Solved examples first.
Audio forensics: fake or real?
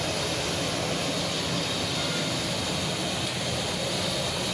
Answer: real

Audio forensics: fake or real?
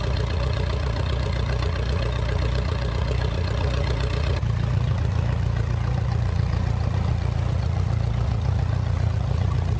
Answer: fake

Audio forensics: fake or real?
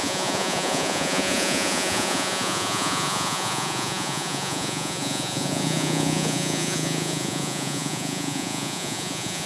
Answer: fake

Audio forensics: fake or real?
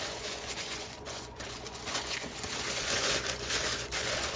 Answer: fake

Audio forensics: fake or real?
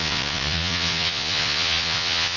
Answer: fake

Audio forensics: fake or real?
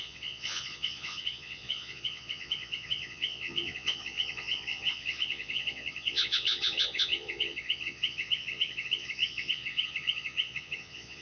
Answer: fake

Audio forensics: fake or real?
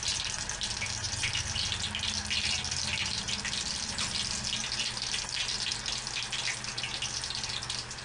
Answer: real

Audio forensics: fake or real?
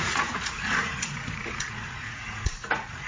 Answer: fake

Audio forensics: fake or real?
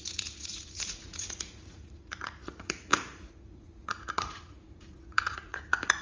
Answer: fake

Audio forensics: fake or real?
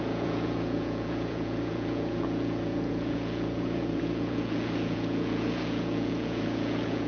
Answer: fake